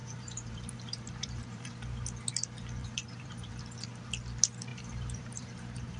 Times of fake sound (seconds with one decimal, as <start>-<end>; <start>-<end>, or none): 0.0-1.7; 2.8-3.5; 4.7-6.0